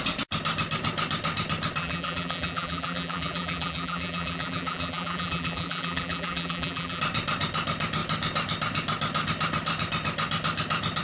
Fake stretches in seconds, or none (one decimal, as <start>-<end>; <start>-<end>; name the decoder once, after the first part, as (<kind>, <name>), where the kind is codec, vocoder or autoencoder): 1.8-7.0 (vocoder, BigVGAN v2)